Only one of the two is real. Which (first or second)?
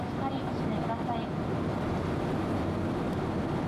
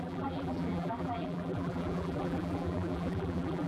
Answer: first